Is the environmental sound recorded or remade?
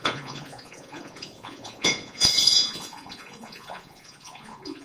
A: remade